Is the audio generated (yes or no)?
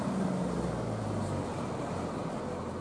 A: no